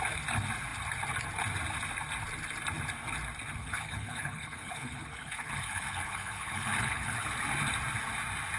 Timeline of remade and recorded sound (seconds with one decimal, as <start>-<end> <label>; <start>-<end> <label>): 0.0-3.6 recorded; 3.6-7.3 remade; 7.3-8.6 recorded